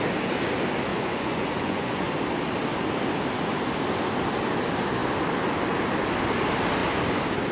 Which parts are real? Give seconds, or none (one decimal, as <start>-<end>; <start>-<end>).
0.0-0.9; 2.1-7.5